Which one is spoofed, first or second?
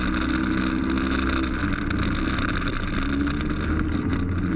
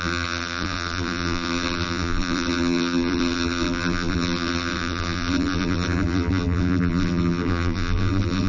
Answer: second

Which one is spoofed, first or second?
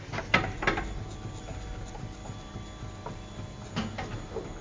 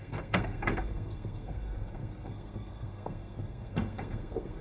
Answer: second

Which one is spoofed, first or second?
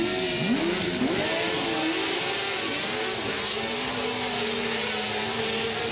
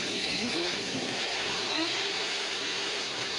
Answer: second